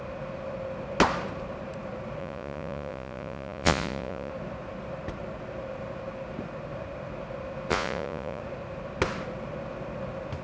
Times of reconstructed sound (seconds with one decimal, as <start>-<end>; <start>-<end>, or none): 2.2-4.3; 7.7-8.4